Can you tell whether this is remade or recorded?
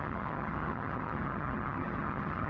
remade